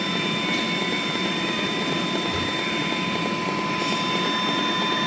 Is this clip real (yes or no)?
yes